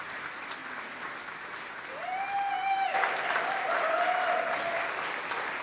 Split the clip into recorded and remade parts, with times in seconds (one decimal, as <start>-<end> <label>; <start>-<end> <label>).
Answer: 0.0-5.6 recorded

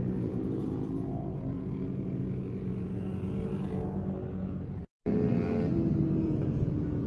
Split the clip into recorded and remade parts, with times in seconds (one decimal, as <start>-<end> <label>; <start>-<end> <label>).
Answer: 0.0-3.1 remade; 3.1-4.3 recorded; 4.3-4.8 remade; 4.8-6.2 recorded; 6.2-7.1 remade

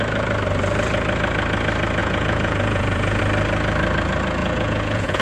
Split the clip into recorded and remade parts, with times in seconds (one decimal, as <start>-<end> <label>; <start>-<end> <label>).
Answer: 0.0-2.0 recorded; 2.0-3.2 remade; 3.2-4.4 recorded; 4.4-5.2 remade